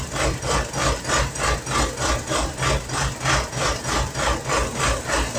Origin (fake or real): real